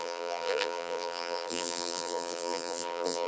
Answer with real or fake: fake